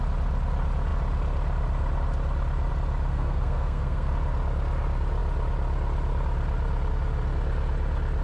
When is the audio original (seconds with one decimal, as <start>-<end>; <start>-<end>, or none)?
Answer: 0.0-3.1; 4.1-8.2